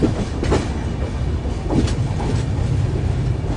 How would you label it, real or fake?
real